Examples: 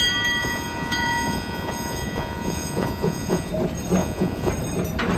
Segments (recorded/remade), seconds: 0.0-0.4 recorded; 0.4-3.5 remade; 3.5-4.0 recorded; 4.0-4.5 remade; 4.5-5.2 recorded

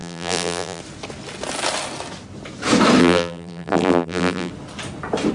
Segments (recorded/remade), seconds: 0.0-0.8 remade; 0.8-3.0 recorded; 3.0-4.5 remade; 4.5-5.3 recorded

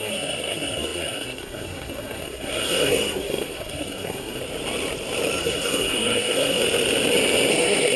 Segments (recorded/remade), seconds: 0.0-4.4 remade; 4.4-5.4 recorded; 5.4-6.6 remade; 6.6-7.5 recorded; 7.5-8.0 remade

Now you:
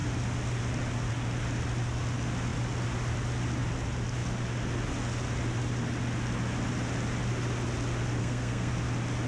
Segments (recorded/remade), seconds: 0.0-8.2 recorded; 8.2-8.7 remade; 8.7-9.3 recorded

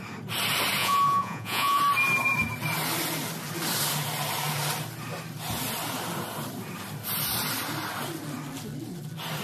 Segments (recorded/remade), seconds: 0.0-0.8 recorded; 0.8-1.8 remade; 1.8-9.4 recorded